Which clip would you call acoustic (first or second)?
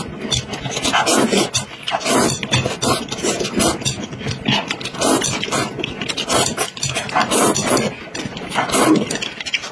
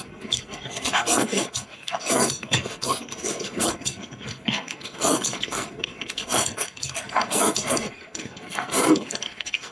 first